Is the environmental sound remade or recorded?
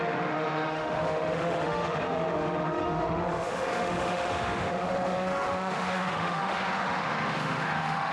remade